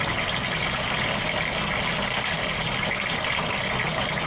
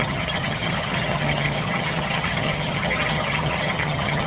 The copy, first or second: second